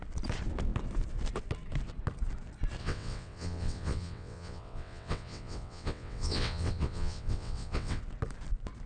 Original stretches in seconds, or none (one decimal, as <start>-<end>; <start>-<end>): 0.0-2.8; 8.0-8.9